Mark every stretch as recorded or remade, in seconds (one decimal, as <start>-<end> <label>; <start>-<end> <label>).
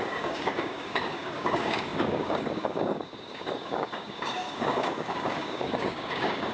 0.0-6.5 remade